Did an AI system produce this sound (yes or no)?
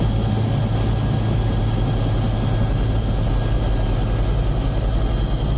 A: no